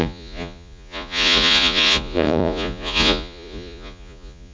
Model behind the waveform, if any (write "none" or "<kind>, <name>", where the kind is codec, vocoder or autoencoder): vocoder, Vocos